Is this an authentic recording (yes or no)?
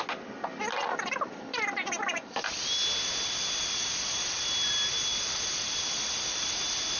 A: yes